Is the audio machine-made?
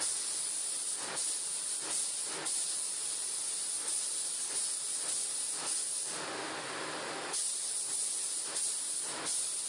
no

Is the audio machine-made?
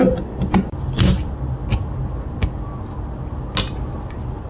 no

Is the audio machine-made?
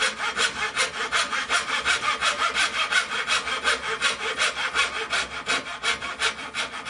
no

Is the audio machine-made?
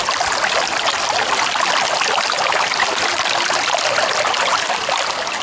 yes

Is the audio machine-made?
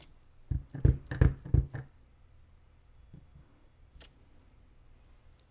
no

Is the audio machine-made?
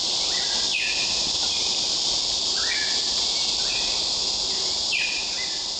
yes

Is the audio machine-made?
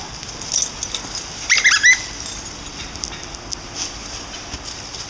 no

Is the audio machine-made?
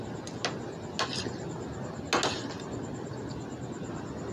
no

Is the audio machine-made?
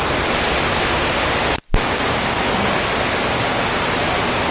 no